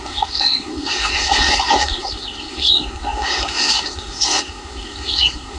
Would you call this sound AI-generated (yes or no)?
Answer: yes